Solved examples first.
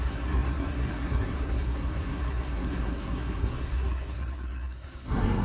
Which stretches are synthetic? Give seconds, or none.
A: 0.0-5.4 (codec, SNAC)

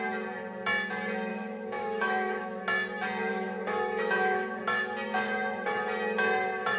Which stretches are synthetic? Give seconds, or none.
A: 1.3-2.6 (autoencoder, DAC-VAE); 3.3-4.6

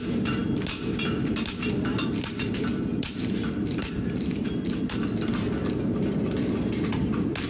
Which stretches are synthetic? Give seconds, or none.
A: 2.9-4.5 (vocoder, BigVGAN v2)

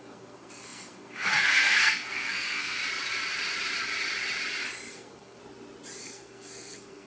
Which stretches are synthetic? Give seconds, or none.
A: 0.0-2.8 (codec, SNAC); 4.9-5.4; 6.0-7.1

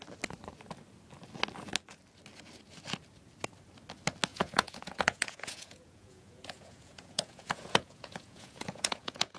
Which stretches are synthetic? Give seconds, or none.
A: 4.3-9.4 (vocoder, Vocos)

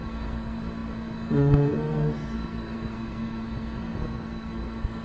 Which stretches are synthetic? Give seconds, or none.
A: 0.0-5.0 (codec, SNAC)

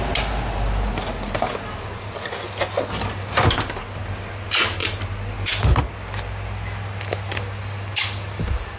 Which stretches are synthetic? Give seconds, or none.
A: none